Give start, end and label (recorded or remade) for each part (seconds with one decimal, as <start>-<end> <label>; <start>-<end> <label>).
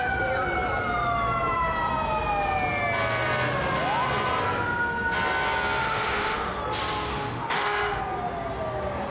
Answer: 0.0-5.8 recorded; 5.8-6.6 remade; 6.6-7.1 recorded; 7.1-8.0 remade; 8.0-9.1 recorded